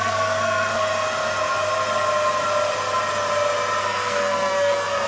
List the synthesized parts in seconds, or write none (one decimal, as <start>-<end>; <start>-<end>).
0.0-0.7; 3.8-5.1